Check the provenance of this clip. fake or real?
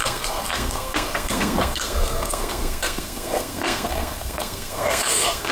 fake